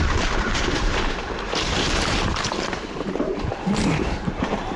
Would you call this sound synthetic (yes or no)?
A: yes